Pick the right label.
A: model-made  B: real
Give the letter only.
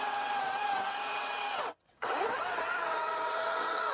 A